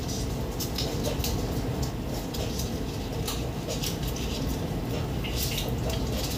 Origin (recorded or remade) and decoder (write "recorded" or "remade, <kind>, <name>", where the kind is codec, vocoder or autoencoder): recorded